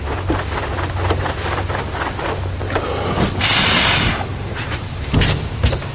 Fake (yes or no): no